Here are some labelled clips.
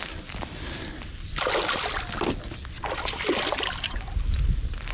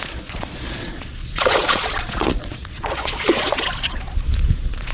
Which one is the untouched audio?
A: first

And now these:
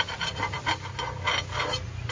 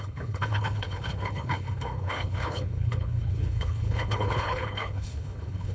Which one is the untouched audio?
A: first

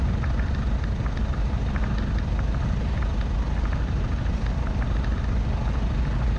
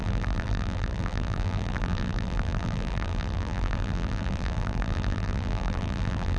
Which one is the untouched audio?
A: first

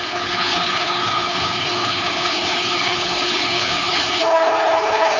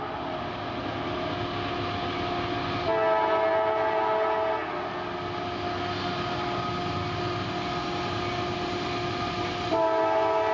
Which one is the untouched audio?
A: second